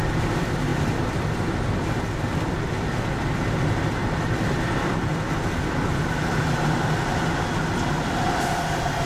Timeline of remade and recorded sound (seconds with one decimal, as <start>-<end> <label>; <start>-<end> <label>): 0.0-4.0 recorded; 4.0-5.1 remade; 5.1-9.1 recorded